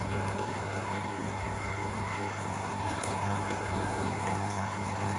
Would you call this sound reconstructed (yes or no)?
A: yes